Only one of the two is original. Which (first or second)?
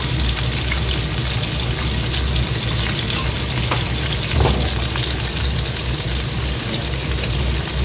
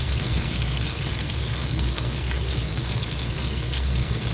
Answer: first